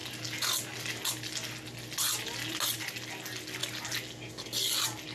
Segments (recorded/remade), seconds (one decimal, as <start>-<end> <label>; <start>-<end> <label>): 0.0-5.1 recorded